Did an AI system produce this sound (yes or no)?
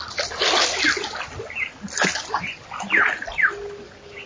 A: no